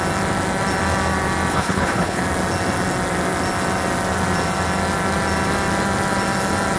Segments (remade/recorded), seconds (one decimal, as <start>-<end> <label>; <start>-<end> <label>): 0.0-1.5 recorded; 1.5-2.2 remade; 2.2-6.8 recorded